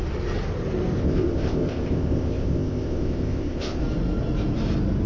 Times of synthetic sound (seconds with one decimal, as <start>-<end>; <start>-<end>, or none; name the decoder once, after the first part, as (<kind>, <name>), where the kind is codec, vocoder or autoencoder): 1.0-3.8 (codec, ZipCodec)